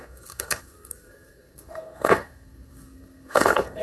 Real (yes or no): no